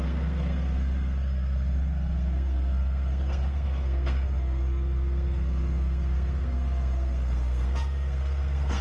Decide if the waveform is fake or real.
fake